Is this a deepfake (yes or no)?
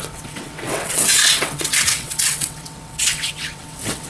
yes